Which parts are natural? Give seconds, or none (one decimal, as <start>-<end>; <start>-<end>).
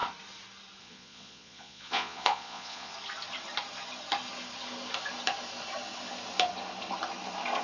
0.0-0.8; 2.9-7.6